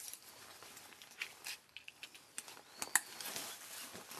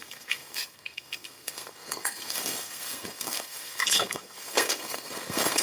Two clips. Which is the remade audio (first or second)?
second